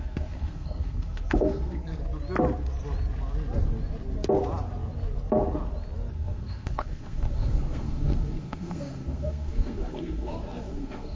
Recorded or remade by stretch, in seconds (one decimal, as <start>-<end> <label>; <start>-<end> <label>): 0.0-2.0 remade; 2.0-6.1 recorded; 6.1-11.2 remade